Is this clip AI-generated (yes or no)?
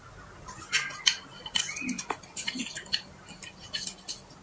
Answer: no